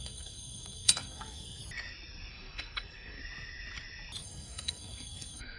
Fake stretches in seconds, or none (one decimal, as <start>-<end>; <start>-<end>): 0.0-1.6; 2.3-3.2; 4.2-5.6